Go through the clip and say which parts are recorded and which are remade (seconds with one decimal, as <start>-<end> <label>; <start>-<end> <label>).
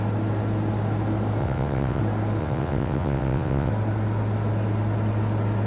0.0-1.4 recorded; 1.4-2.0 remade; 2.0-2.4 recorded; 2.4-3.7 remade; 3.7-5.7 recorded